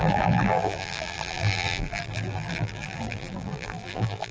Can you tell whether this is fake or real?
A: fake